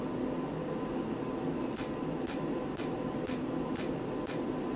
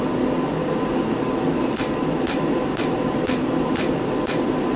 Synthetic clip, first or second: second